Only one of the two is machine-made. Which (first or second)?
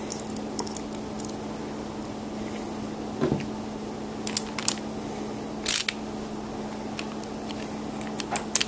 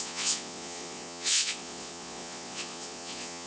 second